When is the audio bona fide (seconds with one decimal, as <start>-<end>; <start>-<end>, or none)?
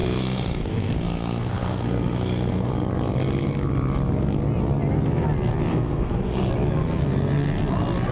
2.7-5.7; 6.5-8.1